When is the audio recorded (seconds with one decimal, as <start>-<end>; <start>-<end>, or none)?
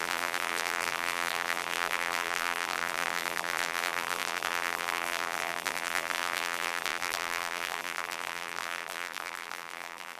none